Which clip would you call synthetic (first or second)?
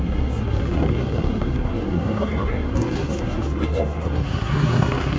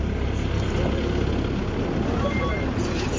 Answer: first